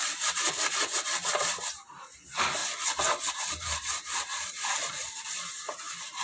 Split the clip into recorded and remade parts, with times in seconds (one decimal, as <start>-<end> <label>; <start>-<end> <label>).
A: 0.0-2.6 remade; 2.6-3.3 recorded; 3.3-6.2 remade